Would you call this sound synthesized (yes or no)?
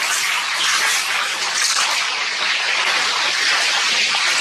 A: no